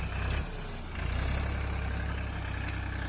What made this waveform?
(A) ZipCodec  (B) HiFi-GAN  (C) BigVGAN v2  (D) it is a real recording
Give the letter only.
D